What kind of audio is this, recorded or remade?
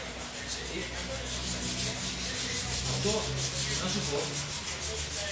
recorded